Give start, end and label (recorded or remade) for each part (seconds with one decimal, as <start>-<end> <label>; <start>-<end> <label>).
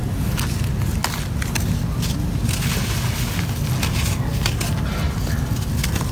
0.0-6.1 recorded